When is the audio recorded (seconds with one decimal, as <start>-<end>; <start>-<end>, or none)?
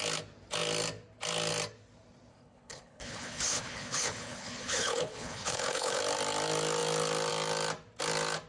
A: 0.0-2.3; 6.0-8.5